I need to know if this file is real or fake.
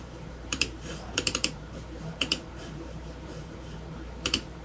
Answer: fake